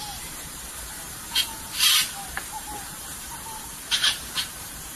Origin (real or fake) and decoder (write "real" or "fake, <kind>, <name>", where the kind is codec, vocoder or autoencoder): fake, vocoder, BigVGAN v2